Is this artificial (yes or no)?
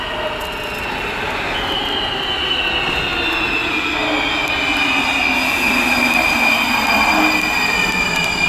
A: no